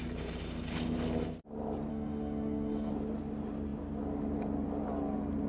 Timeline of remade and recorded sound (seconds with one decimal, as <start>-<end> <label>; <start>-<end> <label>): 0.0-1.9 recorded; 1.9-2.9 remade; 2.9-5.5 recorded